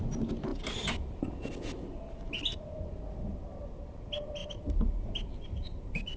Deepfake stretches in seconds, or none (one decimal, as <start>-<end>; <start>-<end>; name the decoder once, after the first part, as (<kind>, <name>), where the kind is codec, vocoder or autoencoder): 4.4-6.2 (vocoder, BigVGAN v2)